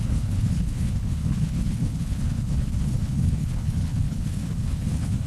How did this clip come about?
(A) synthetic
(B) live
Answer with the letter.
A